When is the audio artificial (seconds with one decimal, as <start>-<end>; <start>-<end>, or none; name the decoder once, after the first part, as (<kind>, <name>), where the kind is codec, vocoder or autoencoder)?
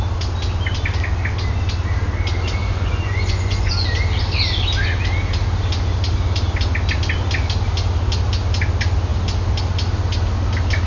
2.6-3.7 (vocoder, Vocos)